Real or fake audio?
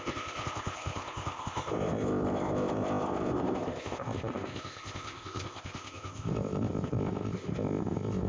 fake